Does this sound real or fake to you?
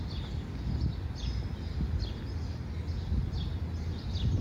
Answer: real